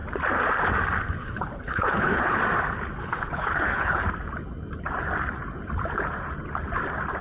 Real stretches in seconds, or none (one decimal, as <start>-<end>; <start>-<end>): 0.0-1.2; 2.4-3.0; 4.0-7.2

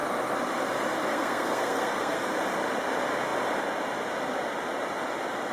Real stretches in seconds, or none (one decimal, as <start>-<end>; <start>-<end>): 0.0-1.1; 2.3-5.5

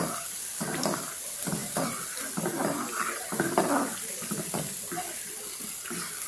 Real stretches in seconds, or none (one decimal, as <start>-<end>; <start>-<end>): 0.0-6.3

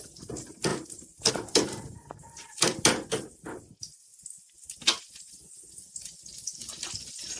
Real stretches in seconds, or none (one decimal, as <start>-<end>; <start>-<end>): 0.0-7.4

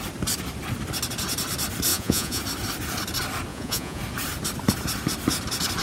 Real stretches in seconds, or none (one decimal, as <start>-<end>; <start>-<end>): 0.0-1.9; 2.4-3.5; 4.0-5.8